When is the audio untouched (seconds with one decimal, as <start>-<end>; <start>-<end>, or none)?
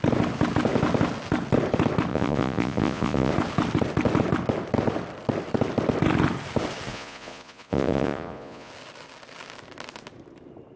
0.0-2.1; 3.3-6.9; 8.7-10.8